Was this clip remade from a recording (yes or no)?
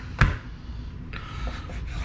no